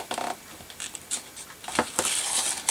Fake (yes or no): yes